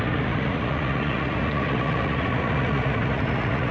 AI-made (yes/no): yes